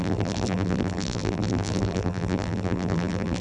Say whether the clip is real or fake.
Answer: fake